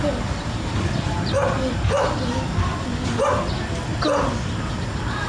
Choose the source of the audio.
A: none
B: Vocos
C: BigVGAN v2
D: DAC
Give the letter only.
A